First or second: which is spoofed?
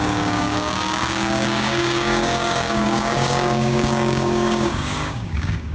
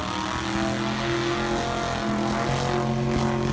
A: first